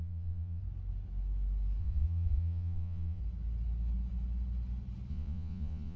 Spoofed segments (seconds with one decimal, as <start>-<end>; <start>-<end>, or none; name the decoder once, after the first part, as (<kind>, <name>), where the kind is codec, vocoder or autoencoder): 0.0-0.6 (vocoder, Vocos); 1.8-3.2; 5.1-6.0